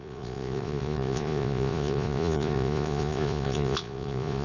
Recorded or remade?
remade